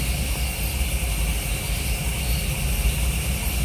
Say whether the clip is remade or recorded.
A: recorded